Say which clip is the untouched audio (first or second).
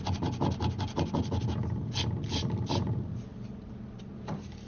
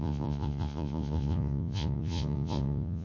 first